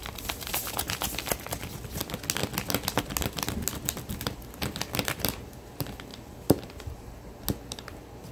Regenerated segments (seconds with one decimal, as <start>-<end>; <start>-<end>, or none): 6.1-7.3